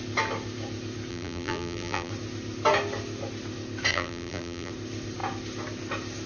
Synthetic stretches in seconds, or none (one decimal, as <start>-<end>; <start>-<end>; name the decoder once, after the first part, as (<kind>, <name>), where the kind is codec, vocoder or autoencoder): 1.1-2.1 (vocoder, BigVGAN v2); 3.9-4.7